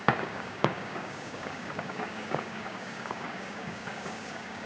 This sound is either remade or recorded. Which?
remade